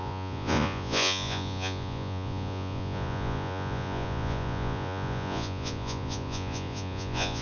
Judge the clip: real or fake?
fake